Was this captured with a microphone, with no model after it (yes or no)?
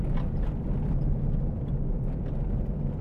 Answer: yes